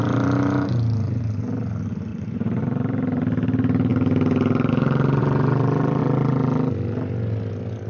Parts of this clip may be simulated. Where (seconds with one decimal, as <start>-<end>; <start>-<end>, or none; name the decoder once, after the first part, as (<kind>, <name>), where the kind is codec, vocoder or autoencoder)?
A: 2.1-2.6 (vocoder, BigVGAN v2); 5.2-6.0